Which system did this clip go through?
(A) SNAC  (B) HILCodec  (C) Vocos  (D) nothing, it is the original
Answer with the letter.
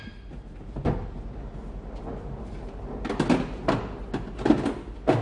D